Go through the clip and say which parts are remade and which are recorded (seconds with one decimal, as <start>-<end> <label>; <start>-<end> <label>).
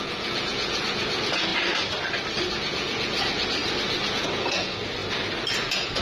0.0-1.5 remade; 1.5-2.5 recorded; 2.5-3.6 remade; 3.6-4.1 recorded; 4.1-5.0 remade; 5.0-5.6 recorded; 5.6-6.0 remade